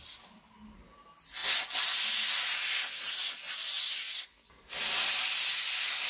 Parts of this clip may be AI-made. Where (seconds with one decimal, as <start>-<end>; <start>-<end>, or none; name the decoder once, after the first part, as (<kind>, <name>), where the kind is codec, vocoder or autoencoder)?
none